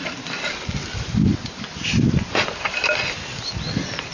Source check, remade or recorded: recorded